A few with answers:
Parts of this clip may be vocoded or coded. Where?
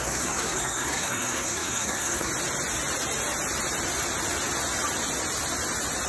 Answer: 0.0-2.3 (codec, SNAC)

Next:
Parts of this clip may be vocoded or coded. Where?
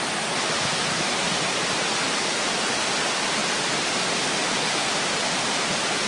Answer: none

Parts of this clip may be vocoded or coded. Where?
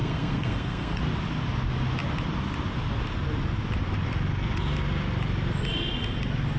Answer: 0.0-1.0 (codec, SNAC)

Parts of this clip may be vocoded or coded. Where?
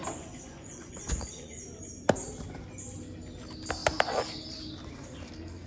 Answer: 0.0-1.8 (vocoder, Vocos)